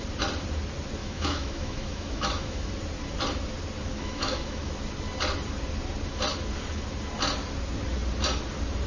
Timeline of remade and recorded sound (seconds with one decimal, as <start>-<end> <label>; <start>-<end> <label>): 0.0-1.0 recorded; 1.0-2.7 remade; 2.7-3.9 recorded; 3.9-4.7 remade; 4.7-8.9 recorded